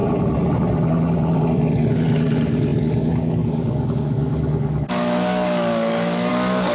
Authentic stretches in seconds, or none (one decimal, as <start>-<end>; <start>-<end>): 0.0-1.9